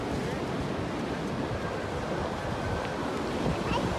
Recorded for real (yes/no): yes